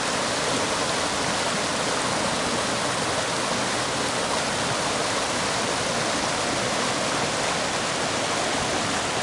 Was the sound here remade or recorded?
recorded